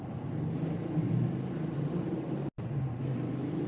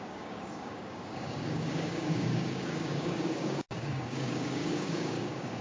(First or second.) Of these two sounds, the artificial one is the second